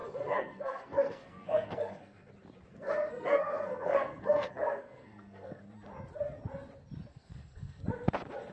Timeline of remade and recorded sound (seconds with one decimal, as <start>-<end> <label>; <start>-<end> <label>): 0.0-2.3 remade; 2.3-2.7 recorded; 2.7-5.6 remade; 5.6-7.1 recorded; 7.1-7.8 remade; 7.8-8.5 recorded